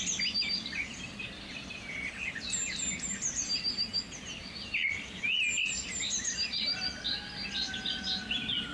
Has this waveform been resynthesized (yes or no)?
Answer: no